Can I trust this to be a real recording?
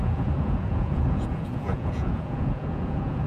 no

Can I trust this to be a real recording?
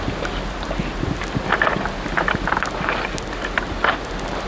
yes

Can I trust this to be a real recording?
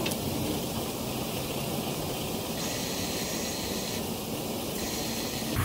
yes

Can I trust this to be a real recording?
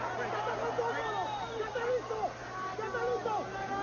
yes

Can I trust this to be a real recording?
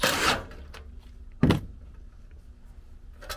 yes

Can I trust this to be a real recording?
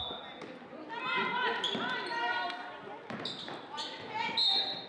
yes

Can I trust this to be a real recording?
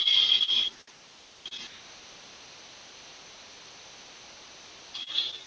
yes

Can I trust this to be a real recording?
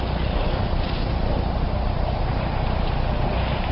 yes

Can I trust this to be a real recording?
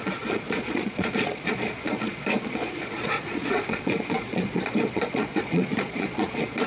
no